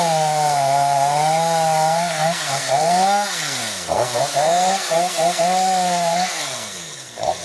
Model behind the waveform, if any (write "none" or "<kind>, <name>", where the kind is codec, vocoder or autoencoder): codec, SNAC